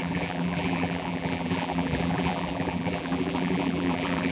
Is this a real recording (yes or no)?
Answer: no